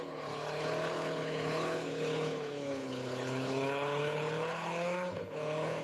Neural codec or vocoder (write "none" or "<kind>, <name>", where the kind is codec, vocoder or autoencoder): codec, HILCodec